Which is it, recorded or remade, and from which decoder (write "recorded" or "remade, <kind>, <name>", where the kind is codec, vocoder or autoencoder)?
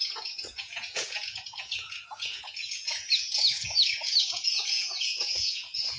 remade, vocoder, Vocos